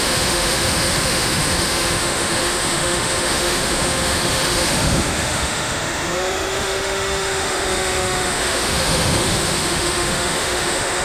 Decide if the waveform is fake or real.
fake